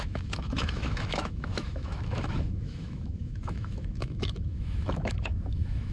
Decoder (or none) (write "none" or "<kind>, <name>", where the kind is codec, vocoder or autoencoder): autoencoder, DAC-VAE